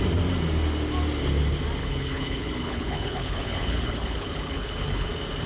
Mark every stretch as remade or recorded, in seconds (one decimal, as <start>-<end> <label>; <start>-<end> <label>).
0.0-1.8 recorded; 1.8-5.1 remade; 5.1-5.5 recorded